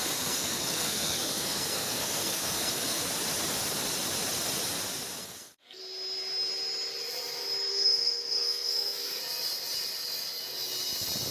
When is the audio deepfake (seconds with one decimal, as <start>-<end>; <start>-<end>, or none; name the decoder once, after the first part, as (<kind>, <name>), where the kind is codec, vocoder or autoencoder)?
0.0-3.1 (codec, SNAC); 5.2-5.8; 7.7-9.2